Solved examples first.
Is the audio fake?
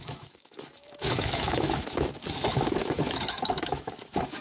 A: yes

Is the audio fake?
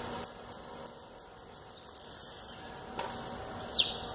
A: no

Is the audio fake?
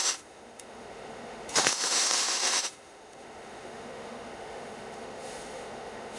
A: yes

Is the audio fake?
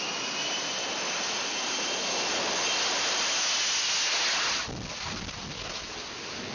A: no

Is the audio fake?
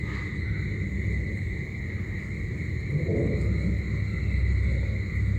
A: no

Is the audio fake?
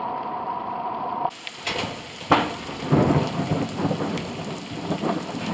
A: no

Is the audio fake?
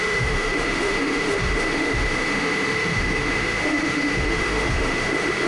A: yes